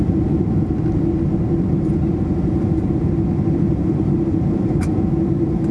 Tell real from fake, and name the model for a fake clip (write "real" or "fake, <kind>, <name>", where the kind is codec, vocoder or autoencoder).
real